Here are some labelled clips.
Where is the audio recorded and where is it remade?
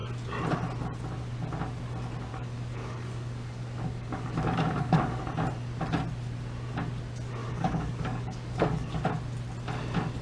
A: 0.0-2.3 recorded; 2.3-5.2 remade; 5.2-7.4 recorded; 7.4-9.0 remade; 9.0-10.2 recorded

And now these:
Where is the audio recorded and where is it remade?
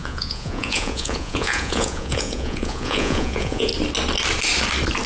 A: 0.0-3.7 remade; 3.7-5.1 recorded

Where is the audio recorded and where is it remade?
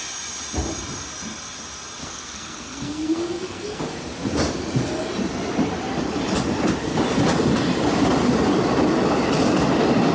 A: 0.0-2.0 recorded; 2.0-3.8 remade; 3.8-10.1 recorded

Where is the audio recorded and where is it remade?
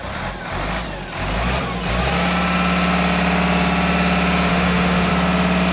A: 0.0-4.5 recorded; 4.5-5.1 remade; 5.1-5.7 recorded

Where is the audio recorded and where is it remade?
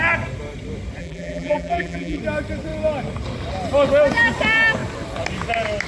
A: 0.0-1.0 recorded; 1.0-2.2 remade; 2.2-5.9 recorded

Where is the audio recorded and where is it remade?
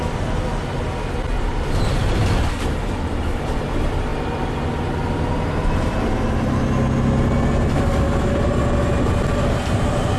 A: 0.0-10.2 recorded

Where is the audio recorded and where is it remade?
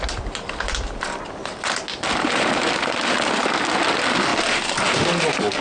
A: 0.0-5.6 recorded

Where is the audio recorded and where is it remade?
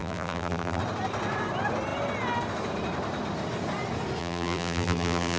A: 0.0-0.8 remade; 0.8-4.2 recorded; 4.2-5.4 remade